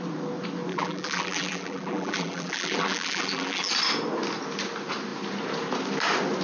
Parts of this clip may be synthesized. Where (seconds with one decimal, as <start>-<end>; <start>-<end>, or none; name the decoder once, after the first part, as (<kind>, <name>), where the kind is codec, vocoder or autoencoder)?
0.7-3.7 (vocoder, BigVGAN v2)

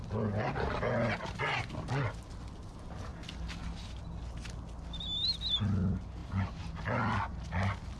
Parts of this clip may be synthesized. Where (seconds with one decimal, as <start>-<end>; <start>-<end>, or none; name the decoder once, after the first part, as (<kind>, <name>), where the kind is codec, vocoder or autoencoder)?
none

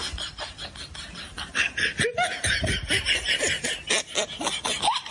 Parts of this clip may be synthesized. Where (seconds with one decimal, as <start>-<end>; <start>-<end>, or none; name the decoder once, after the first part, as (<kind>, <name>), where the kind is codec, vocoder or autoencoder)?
0.9-1.9 (vocoder, BigVGAN v2)

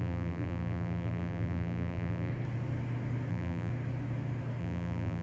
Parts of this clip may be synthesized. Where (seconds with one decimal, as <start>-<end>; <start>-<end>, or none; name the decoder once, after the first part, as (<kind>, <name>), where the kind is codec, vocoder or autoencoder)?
0.0-2.3 (vocoder, BigVGAN v2); 3.3-3.7; 4.6-5.2

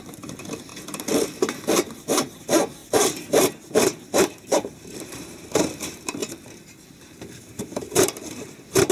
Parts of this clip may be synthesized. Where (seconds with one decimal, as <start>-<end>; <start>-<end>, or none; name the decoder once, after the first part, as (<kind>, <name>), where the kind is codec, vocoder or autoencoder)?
0.0-0.7 (vocoder, BigVGAN v2); 2.4-6.2; 7.2-8.9

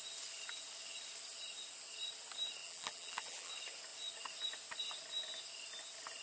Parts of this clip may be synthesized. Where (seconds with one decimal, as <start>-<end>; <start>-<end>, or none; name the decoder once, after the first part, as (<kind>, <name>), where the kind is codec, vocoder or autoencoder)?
2.6-3.5 (vocoder, BigVGAN v2)